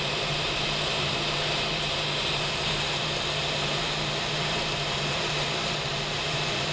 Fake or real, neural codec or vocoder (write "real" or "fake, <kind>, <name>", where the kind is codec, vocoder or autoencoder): fake, vocoder, BigVGAN v2